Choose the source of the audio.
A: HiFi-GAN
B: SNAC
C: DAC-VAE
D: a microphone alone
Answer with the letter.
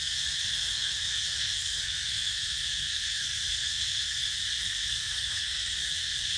B